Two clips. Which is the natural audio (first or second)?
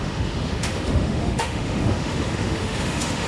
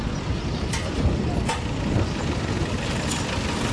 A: second